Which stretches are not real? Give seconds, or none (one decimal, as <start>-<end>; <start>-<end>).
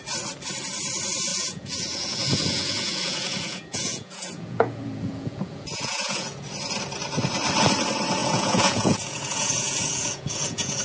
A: 1.3-6.4; 8.2-10.8